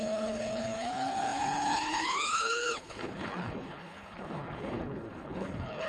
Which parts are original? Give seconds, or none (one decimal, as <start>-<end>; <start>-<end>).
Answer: none